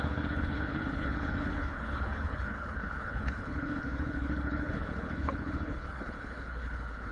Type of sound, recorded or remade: remade